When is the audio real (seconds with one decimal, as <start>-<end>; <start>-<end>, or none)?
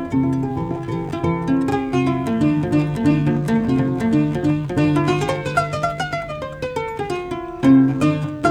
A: 0.0-0.5; 1.2-1.7; 6.3-7.9